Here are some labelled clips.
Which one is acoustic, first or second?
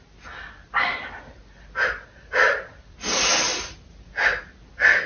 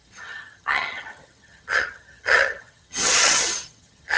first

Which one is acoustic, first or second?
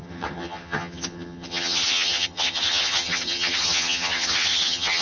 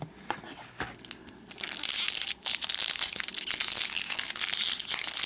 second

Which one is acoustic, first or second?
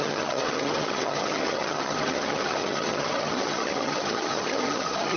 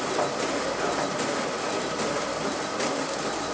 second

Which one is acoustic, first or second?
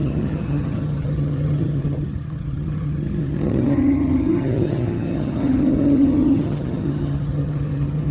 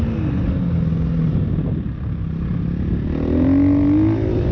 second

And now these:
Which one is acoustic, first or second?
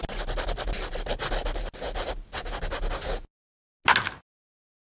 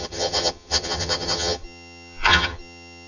first